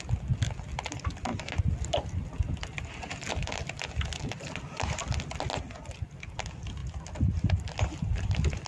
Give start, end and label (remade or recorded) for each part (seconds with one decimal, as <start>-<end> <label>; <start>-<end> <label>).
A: 0.0-8.7 recorded